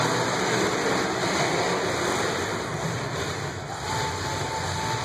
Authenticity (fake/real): real